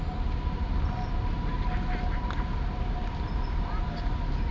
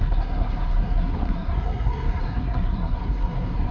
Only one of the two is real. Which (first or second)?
first